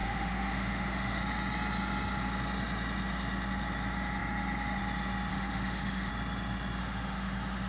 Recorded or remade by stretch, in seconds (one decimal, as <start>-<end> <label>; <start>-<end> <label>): 0.0-1.2 remade; 1.2-5.3 recorded; 5.3-6.1 remade; 6.1-6.8 recorded; 6.8-7.7 remade